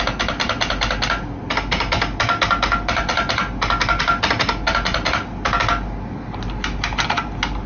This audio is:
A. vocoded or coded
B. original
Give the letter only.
B